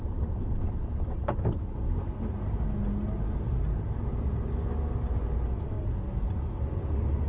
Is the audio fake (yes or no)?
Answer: no